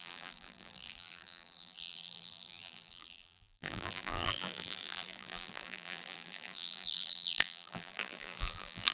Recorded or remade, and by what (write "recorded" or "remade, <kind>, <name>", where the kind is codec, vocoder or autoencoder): remade, vocoder, BigVGAN v2